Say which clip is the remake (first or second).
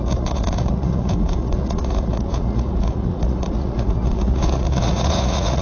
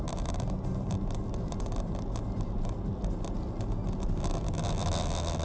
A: first